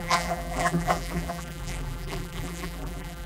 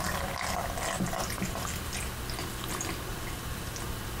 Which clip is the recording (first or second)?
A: second